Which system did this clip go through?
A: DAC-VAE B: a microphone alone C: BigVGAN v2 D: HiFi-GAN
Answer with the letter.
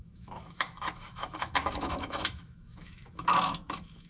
A